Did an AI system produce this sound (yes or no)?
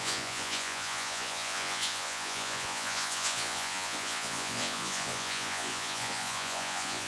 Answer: yes